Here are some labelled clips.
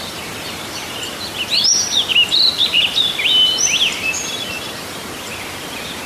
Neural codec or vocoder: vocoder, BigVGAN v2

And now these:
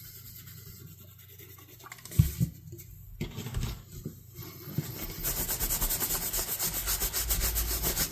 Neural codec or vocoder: none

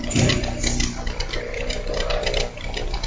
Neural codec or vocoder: vocoder, BigVGAN v2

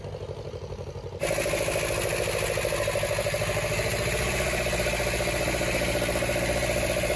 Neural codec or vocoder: none